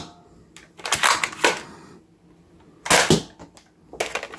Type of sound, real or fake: real